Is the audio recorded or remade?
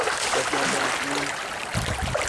recorded